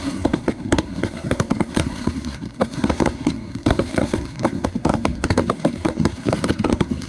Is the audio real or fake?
fake